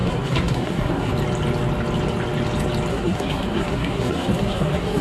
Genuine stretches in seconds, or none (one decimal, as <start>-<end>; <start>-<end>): 1.1-2.9